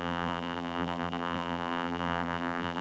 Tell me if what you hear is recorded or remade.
remade